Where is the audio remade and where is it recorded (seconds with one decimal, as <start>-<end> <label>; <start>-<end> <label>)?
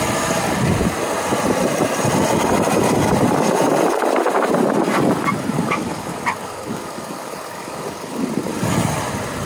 0.0-5.5 recorded; 5.5-8.2 remade; 8.2-9.5 recorded